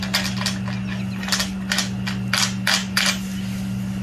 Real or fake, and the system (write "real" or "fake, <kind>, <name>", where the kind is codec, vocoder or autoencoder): real